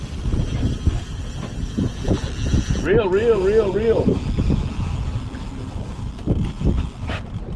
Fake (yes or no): no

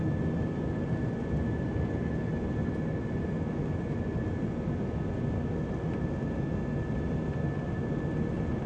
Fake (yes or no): no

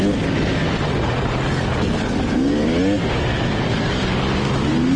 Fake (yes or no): no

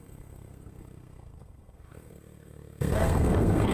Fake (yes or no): yes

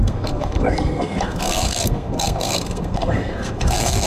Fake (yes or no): yes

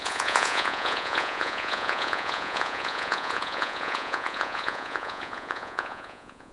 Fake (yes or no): yes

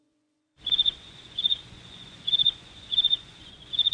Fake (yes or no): yes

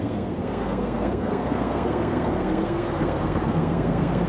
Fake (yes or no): yes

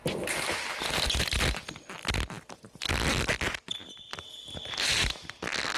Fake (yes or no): no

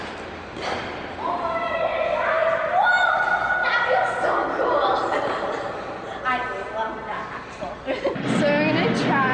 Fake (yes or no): no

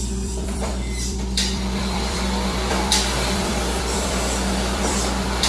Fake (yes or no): yes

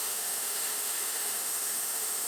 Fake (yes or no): yes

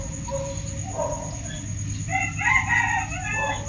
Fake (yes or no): no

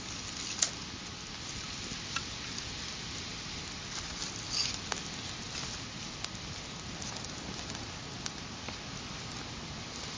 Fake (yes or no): no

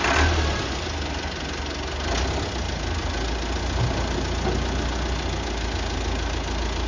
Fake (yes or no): no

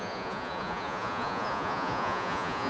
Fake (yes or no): yes